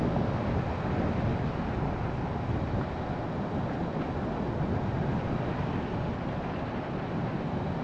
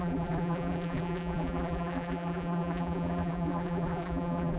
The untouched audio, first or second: first